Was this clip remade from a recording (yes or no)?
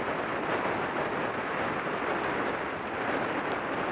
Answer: no